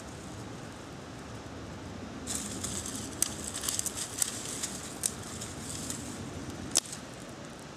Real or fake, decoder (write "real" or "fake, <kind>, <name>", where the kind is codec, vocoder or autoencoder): real